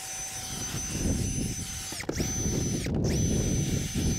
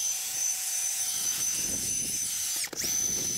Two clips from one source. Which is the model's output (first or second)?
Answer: second